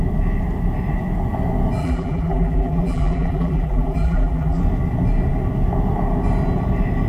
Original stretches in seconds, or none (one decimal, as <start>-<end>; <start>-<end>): 0.0-1.8; 4.6-7.1